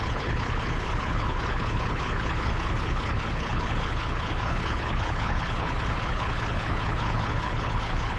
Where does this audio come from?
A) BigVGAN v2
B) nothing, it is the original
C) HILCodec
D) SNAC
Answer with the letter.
C